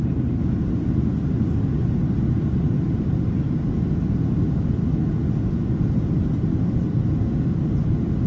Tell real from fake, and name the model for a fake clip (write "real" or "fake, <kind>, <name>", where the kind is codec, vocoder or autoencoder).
real